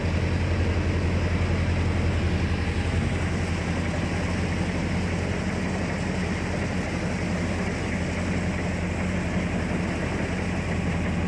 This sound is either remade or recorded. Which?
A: recorded